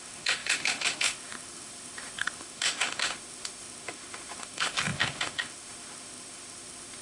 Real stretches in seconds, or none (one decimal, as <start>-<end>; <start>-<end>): none

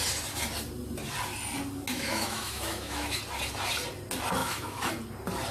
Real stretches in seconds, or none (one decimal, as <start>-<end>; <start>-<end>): 0.0-1.9; 3.2-4.4; 4.9-5.5

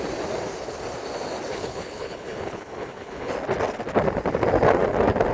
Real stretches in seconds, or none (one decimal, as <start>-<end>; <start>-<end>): 0.0-1.5; 3.3-5.3